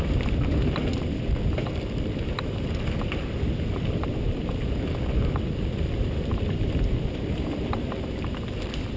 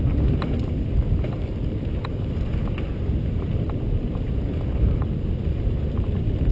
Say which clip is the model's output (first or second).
first